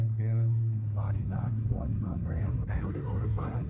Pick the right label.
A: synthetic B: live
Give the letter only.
A